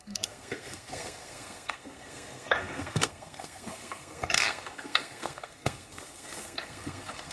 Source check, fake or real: fake